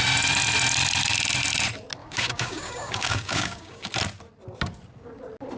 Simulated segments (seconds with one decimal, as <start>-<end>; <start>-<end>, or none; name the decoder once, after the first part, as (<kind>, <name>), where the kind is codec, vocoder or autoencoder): 2.0-3.9 (codec, DAC)